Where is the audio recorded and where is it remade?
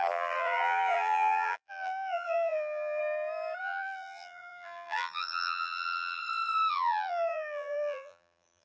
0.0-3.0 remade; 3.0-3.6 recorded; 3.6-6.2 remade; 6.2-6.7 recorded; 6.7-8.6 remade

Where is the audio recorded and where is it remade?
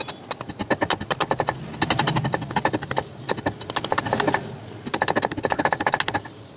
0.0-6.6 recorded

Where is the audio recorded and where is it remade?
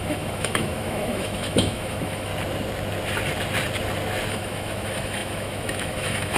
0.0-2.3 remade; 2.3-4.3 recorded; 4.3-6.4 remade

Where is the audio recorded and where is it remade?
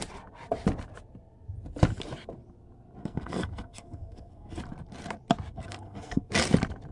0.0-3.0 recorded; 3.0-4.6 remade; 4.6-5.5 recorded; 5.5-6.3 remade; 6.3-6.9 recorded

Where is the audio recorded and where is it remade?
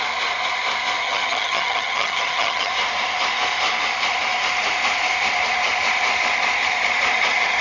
0.0-1.0 recorded; 1.0-2.7 remade; 2.7-7.6 recorded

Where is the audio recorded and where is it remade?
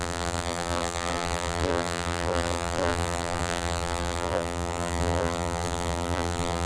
0.0-6.7 remade